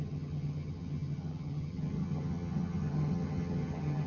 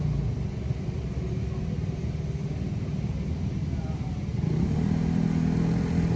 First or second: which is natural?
second